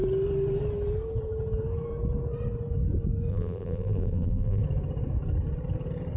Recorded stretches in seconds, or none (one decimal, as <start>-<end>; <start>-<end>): 0.0-3.3; 4.6-6.2